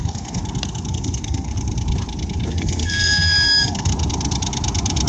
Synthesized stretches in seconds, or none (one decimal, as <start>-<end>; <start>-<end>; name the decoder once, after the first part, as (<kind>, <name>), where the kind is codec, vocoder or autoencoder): 0.0-0.4 (codec, SNAC); 0.9-1.5; 2.5-3.9